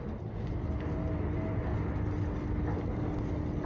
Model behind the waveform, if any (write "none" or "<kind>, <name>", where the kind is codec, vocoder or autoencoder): none